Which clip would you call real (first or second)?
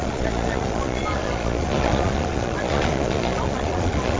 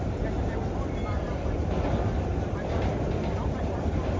second